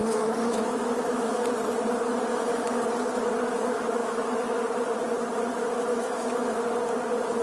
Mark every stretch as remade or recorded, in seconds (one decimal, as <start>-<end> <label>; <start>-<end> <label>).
0.0-1.4 remade; 1.4-2.3 recorded; 2.3-2.8 remade; 2.8-4.0 recorded; 4.0-4.5 remade; 4.5-5.9 recorded; 5.9-6.6 remade; 6.6-7.4 recorded